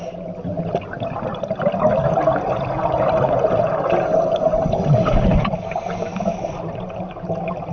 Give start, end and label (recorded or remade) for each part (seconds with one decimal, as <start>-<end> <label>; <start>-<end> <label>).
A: 0.0-7.7 recorded